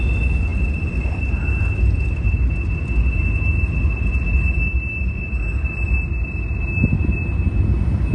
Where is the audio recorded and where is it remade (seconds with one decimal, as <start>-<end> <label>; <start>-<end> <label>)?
0.0-8.1 recorded